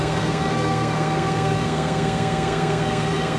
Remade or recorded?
remade